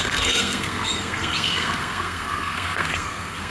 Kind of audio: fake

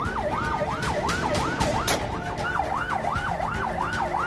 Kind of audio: real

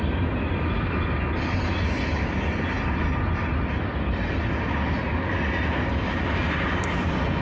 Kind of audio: real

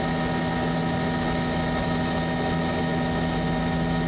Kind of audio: real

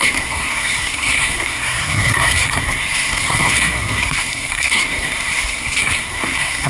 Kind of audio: fake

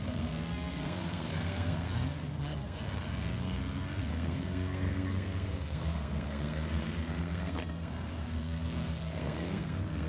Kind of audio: fake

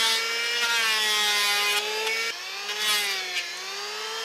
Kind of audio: real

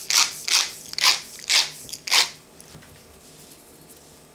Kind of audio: real